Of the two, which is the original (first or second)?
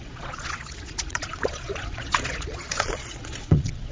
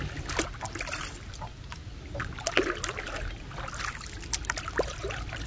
second